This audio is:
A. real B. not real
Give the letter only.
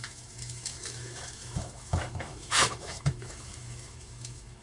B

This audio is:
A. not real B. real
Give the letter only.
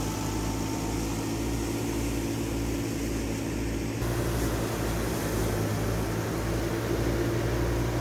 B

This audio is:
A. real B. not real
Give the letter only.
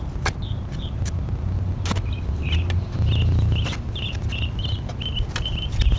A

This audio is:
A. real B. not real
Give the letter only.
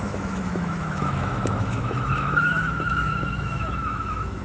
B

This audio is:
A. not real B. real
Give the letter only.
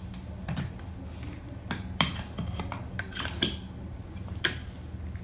B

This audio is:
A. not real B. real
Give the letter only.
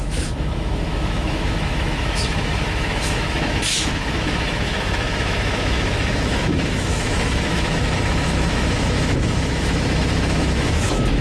A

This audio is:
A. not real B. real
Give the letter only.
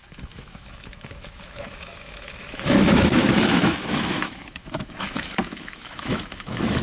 A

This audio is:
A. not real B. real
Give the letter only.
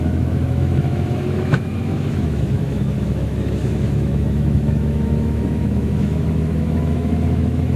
A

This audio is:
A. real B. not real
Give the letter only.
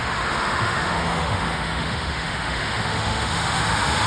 B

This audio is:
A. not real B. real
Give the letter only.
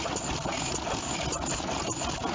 B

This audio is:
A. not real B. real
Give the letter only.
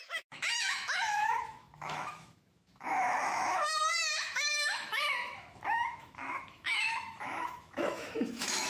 A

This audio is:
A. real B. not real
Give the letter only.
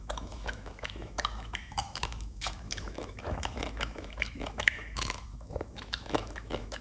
B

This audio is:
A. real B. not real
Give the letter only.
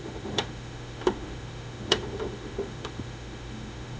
B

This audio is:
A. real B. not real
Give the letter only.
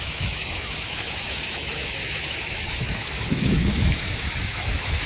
B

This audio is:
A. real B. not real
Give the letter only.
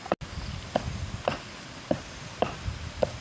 A